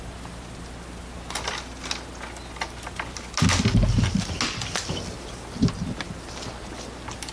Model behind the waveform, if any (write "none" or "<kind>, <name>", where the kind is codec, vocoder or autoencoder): none